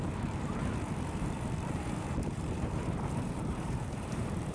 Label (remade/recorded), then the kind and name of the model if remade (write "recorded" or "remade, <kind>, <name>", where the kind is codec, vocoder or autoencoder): remade, vocoder, BigVGAN v2